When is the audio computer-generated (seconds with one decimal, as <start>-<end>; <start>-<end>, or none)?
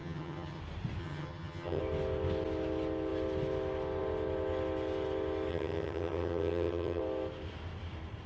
0.0-0.6; 1.0-1.8; 5.5-7.0